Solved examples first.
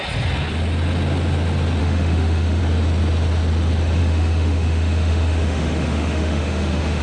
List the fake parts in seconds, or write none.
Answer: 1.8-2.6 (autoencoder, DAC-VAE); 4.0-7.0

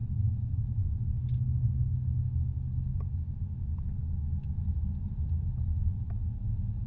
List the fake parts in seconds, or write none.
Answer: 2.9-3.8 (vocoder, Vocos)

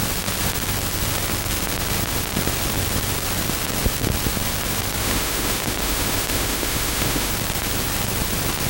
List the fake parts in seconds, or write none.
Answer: 5.0-7.3 (autoencoder, DAC-VAE)

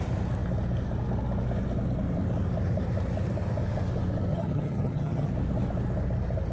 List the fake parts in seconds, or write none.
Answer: 4.3-5.3 (vocoder, HiFi-GAN)

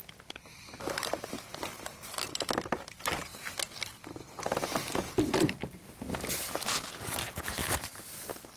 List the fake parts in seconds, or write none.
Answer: 7.6-8.6 (vocoder, BigVGAN v2)